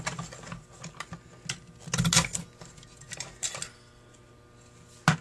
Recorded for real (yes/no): yes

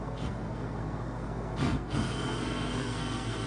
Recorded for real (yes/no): no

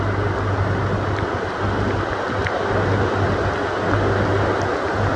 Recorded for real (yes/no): yes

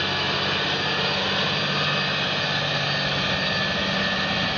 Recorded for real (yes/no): yes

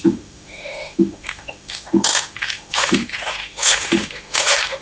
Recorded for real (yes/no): no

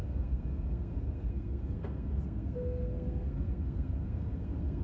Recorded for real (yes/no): no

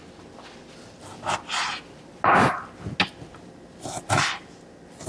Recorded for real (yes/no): yes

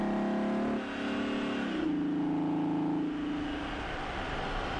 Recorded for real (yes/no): yes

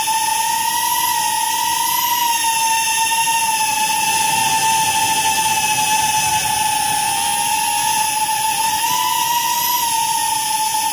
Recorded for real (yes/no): yes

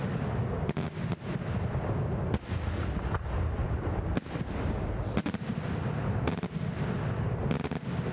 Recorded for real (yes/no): yes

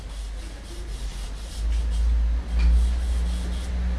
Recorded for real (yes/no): yes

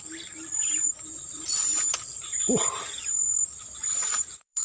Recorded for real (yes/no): no